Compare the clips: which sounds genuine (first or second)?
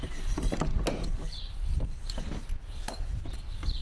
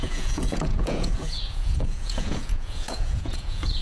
first